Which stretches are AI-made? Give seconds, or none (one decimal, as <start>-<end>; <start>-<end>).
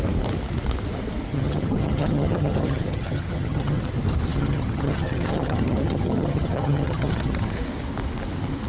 1.3-3.8; 4.3-7.5